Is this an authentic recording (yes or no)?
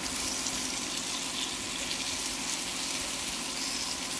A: yes